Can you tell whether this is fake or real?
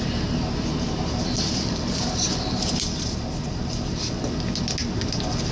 real